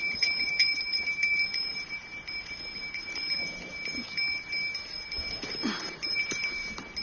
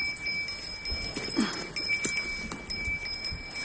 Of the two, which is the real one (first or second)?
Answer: second